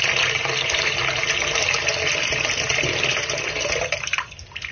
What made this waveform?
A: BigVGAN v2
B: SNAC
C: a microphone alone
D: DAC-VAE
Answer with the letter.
C